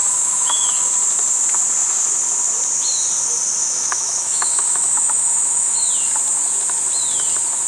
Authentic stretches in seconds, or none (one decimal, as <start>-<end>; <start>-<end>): 0.7-3.6; 5.9-7.7